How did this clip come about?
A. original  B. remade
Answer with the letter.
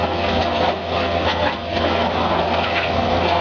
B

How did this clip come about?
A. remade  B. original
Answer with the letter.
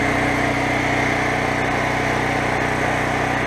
B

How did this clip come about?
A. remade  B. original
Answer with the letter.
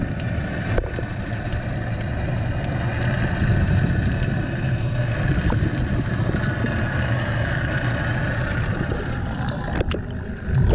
B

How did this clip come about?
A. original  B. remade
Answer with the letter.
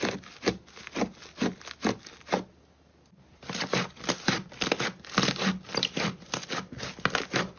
A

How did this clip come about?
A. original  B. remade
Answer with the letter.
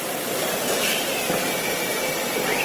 B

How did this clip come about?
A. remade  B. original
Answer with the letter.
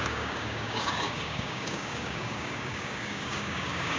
A